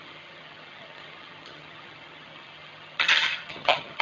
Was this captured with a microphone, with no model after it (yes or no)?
no